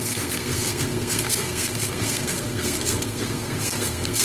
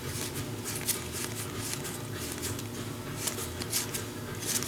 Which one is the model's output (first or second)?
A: first